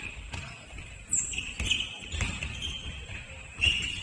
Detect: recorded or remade recorded